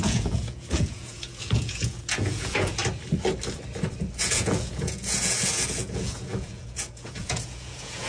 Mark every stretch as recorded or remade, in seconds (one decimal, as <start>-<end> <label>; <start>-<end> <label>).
0.0-2.8 remade; 2.8-4.2 recorded; 4.2-8.1 remade